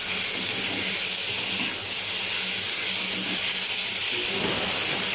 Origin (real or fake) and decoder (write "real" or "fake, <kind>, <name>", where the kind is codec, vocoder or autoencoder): real